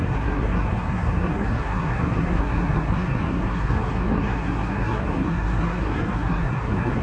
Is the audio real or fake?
fake